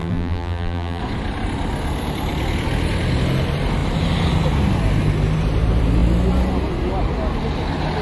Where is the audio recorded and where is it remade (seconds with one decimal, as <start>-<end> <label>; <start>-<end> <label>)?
0.0-1.0 remade; 1.0-8.0 recorded